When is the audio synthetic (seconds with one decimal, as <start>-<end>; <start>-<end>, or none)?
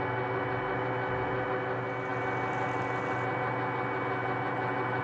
none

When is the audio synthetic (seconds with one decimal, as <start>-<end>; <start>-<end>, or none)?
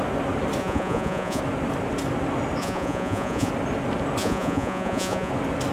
0.6-1.4; 2.6-3.5; 4.2-5.3